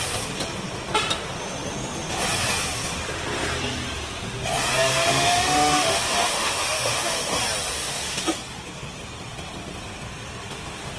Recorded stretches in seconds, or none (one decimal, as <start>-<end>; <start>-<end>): 0.0-4.9; 7.3-7.7; 8.2-11.0